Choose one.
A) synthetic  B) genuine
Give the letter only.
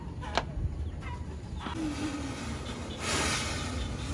B